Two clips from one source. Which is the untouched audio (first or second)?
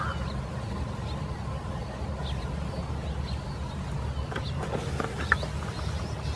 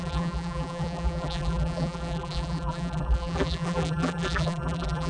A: first